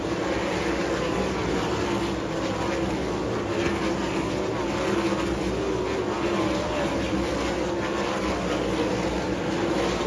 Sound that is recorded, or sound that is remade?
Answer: recorded